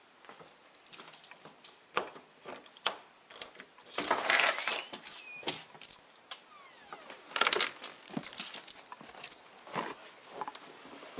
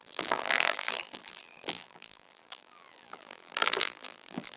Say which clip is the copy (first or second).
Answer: second